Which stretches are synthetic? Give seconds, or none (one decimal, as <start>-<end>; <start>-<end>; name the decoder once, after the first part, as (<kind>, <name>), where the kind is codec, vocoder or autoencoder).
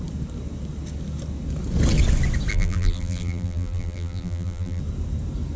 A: 2.5-4.8 (vocoder, BigVGAN v2)